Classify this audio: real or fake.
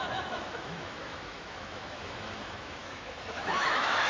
fake